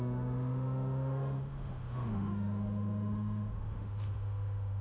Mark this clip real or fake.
fake